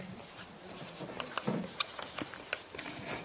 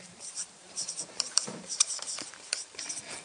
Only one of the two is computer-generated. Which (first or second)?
second